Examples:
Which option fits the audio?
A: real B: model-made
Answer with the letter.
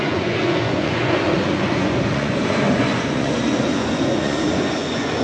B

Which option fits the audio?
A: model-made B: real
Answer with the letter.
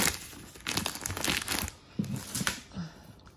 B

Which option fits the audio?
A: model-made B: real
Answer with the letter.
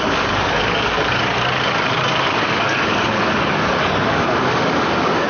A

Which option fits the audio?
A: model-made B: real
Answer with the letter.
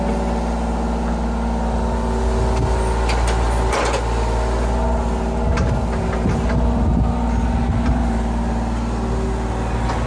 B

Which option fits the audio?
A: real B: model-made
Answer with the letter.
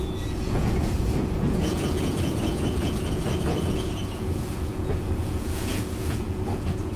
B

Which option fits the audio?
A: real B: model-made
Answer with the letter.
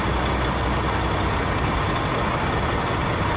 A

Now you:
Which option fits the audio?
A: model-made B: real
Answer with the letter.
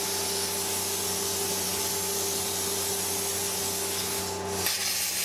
B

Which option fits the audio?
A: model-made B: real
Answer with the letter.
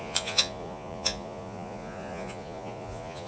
A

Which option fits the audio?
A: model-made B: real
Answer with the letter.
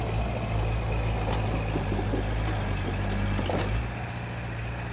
B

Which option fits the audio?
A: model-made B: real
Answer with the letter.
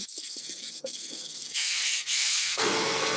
A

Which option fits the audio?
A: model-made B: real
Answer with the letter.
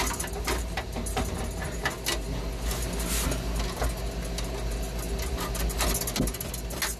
B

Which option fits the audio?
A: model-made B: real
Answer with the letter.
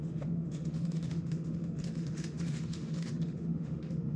A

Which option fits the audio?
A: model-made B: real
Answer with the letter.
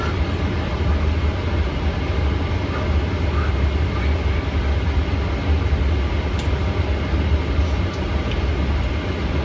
B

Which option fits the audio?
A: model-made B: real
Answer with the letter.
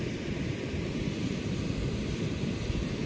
B